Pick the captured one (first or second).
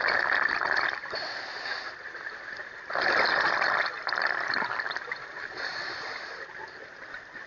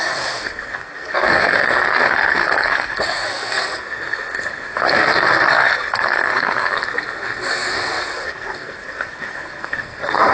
first